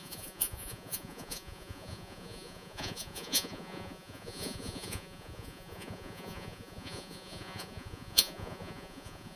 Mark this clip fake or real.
fake